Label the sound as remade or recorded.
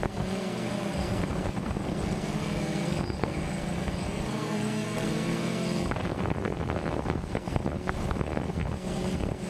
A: remade